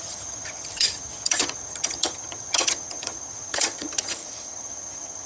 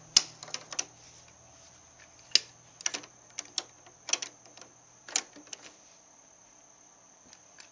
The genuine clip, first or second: second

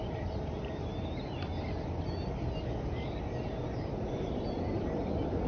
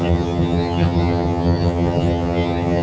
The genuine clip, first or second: first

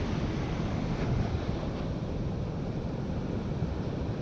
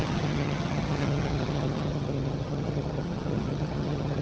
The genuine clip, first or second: first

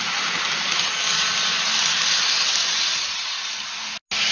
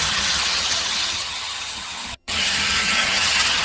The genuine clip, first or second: first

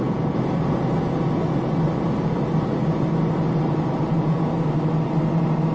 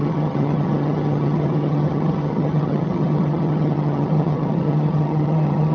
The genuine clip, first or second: first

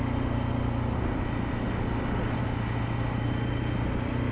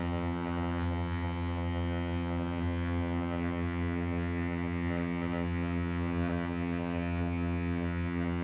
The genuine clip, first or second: first